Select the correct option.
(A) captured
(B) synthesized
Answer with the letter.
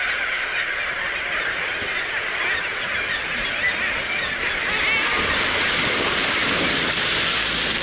A